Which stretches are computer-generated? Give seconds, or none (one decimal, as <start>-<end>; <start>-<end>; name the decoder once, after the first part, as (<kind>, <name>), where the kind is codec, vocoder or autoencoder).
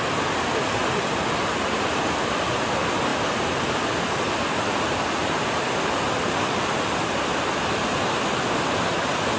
none